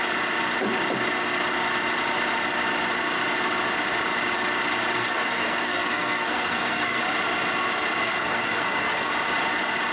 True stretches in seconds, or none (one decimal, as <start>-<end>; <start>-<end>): 0.0-5.0; 7.0-8.0; 9.1-9.9